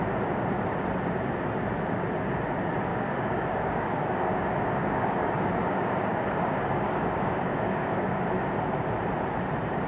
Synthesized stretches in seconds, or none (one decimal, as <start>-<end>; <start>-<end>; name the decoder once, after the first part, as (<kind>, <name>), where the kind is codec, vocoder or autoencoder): 2.9-8.1 (codec, DAC)